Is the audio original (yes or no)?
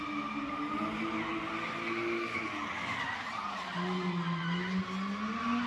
yes